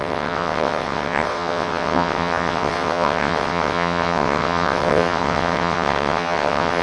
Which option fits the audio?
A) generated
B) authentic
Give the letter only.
A